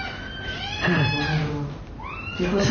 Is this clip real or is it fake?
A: real